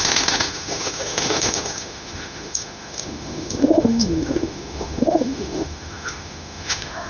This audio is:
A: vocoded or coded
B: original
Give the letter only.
A